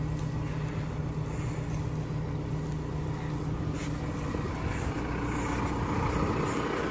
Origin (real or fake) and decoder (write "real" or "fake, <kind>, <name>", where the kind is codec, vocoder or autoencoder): real